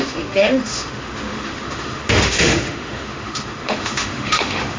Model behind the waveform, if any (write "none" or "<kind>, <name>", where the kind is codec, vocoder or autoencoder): autoencoder, DAC-VAE